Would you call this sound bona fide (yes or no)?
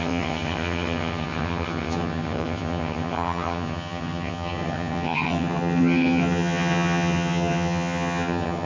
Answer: no